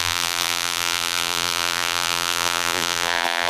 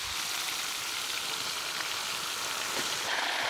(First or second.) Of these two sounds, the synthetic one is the first